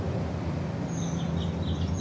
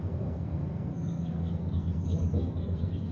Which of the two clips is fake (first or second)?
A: second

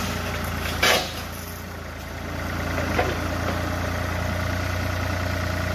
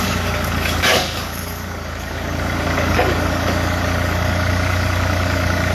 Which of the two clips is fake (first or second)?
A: second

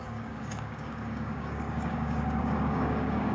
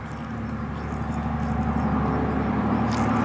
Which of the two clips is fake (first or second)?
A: first